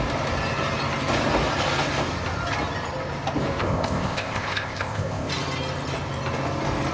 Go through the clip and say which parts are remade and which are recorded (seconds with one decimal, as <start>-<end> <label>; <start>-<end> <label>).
0.0-3.6 recorded; 3.6-5.3 remade; 5.3-6.9 recorded